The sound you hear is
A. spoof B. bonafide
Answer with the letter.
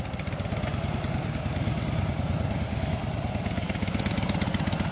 B